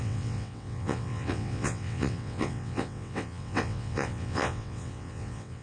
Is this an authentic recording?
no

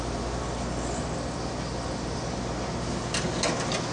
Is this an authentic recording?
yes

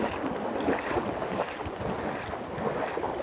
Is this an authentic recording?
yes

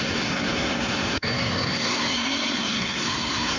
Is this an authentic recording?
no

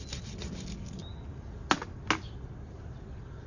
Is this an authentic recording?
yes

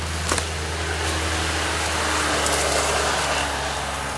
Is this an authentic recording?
yes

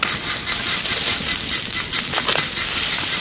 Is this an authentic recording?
yes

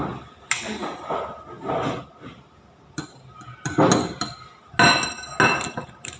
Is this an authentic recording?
yes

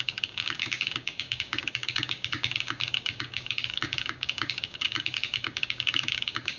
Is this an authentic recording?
no